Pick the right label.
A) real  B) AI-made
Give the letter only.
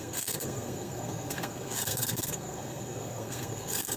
B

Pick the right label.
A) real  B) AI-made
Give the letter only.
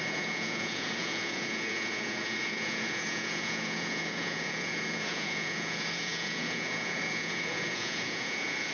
B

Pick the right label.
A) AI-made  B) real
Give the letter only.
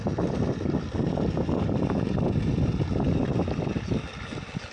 B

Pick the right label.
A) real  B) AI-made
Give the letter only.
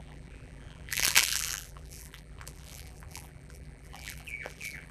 B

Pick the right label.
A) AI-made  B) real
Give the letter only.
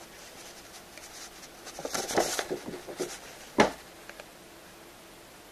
B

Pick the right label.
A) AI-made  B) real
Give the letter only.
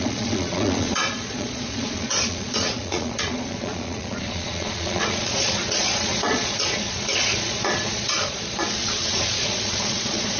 A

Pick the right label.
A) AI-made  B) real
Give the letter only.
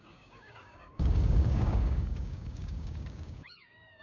A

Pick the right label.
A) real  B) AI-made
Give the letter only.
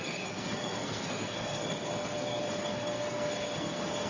B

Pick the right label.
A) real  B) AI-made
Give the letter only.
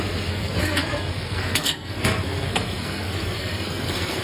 B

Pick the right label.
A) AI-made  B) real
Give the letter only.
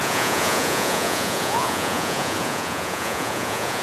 A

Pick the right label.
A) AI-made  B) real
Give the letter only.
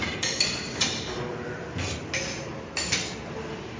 B